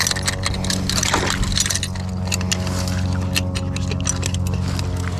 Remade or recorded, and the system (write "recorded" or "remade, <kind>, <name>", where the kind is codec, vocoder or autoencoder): recorded